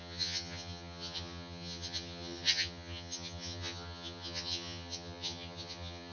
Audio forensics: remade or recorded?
remade